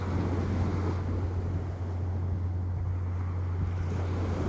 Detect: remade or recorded recorded